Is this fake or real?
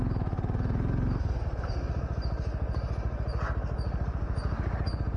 real